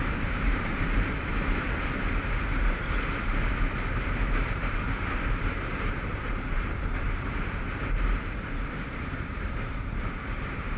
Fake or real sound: fake